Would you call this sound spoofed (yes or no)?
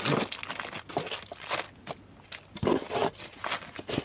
no